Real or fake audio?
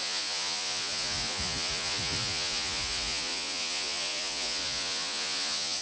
fake